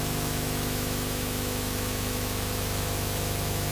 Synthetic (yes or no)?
yes